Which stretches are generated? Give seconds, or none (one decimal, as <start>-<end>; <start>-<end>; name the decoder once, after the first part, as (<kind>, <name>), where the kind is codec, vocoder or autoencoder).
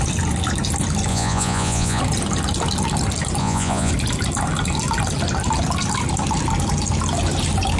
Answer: 1.1-2.0 (vocoder, Vocos); 3.4-3.9